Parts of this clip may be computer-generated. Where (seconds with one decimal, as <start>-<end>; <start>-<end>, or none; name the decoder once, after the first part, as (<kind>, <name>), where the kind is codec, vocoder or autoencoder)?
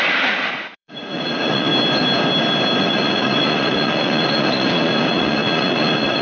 0.0-1.7 (vocoder, Vocos); 2.8-6.2